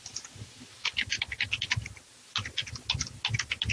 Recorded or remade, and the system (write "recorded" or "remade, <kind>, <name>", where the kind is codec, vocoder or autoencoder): recorded